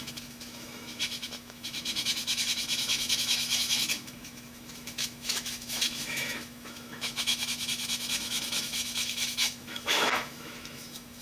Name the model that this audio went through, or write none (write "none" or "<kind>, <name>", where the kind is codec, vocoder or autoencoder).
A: autoencoder, DAC-VAE